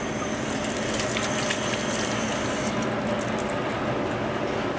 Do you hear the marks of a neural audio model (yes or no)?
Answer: no